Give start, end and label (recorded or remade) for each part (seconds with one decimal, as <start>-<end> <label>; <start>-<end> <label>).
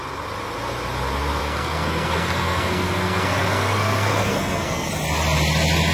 0.0-1.4 recorded; 1.4-4.9 remade; 4.9-5.9 recorded